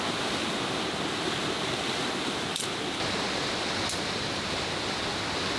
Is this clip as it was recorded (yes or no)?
yes